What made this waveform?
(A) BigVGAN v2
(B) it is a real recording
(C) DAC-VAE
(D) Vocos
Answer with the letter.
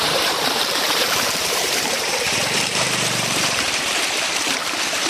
A